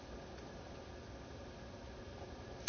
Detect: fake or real real